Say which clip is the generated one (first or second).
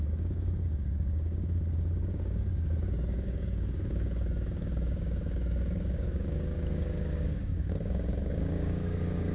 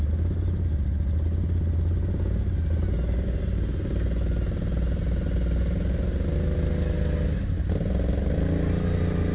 first